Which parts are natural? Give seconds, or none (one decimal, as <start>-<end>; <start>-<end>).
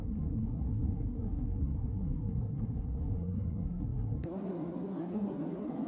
none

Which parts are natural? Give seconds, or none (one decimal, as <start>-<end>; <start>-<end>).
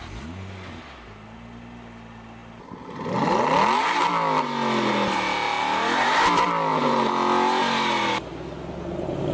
0.0-9.3